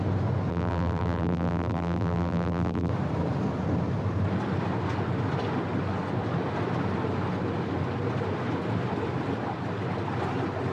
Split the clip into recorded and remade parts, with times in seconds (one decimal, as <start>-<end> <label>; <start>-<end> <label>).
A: 0.0-0.5 recorded; 0.5-2.9 remade; 2.9-10.7 recorded